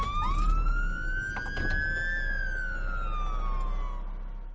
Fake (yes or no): no